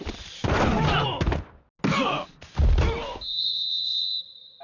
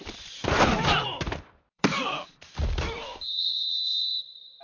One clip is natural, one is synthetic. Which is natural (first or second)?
first